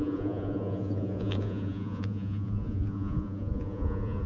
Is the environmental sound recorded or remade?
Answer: remade